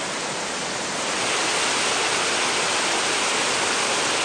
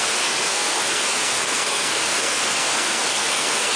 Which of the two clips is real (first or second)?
first